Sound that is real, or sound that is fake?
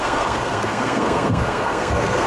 fake